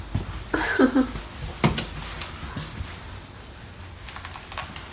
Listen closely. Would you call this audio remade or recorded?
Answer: recorded